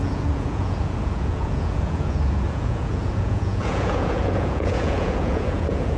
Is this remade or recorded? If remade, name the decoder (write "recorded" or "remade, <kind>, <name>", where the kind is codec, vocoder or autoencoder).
remade, vocoder, Vocos